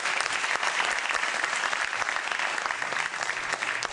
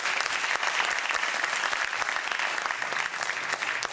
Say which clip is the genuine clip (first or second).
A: second